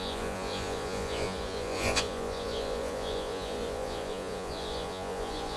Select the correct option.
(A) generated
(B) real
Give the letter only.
A